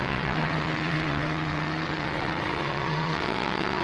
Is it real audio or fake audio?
fake